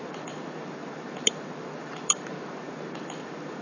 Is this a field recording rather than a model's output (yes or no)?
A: no